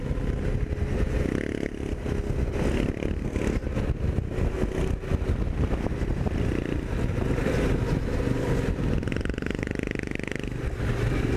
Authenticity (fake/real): real